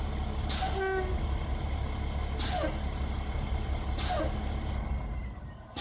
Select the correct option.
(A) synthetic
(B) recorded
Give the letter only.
B